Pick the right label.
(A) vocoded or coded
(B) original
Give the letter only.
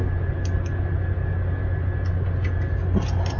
B